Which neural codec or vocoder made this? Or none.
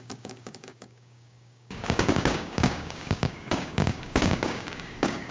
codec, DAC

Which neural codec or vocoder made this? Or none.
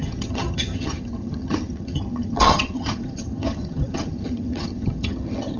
vocoder, HiFi-GAN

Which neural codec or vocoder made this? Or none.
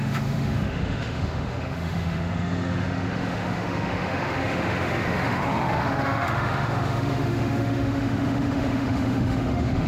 autoencoder, DAC-VAE